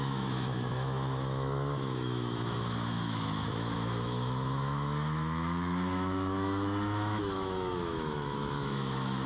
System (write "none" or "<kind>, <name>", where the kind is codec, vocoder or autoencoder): autoencoder, DAC-VAE